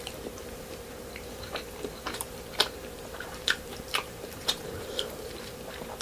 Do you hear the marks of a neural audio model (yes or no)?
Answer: yes